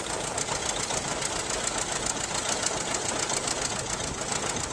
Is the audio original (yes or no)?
yes